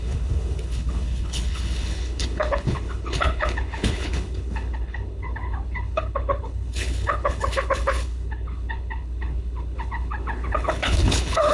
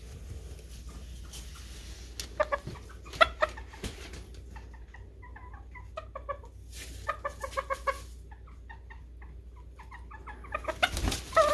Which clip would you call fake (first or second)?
first